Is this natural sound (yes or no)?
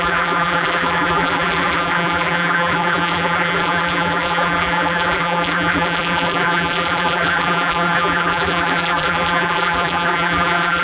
no